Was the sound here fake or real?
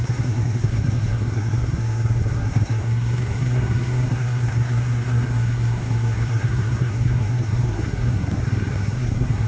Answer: fake